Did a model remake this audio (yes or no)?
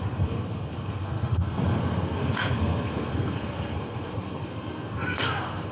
yes